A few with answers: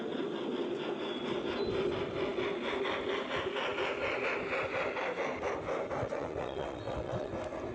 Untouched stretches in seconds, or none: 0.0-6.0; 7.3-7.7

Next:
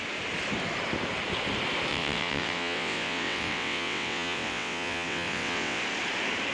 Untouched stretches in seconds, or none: 0.0-1.9; 5.8-6.5

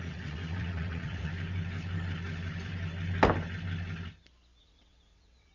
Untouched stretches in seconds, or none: 1.3-4.6

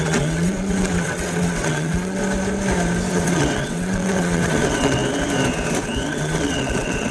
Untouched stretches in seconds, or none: 2.2-3.1; 5.0-6.0

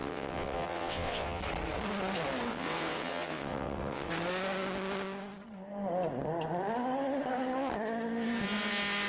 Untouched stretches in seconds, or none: 1.4-2.5; 4.1-9.1

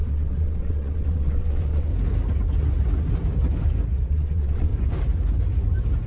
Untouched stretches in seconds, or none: 1.9-4.1; 4.7-6.1